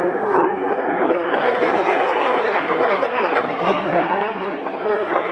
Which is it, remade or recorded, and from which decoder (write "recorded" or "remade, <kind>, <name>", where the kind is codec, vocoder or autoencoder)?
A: remade, codec, SNAC